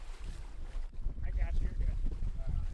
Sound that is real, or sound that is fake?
fake